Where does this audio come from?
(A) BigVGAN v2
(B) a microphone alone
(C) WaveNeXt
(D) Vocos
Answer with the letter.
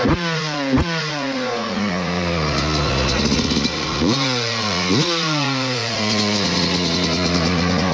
D